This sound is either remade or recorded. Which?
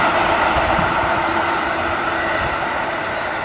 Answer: recorded